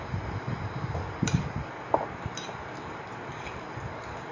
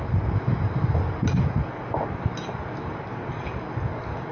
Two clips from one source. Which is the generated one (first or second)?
first